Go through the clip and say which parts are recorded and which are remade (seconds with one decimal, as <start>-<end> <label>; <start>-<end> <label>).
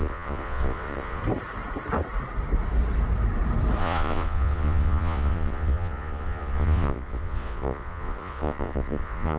0.0-1.2 remade; 1.2-3.8 recorded; 3.8-9.4 remade